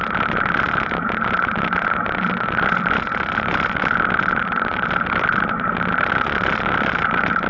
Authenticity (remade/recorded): recorded